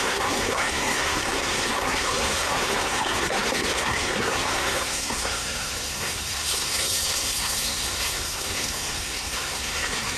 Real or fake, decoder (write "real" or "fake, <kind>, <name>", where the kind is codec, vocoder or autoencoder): fake, codec, SNAC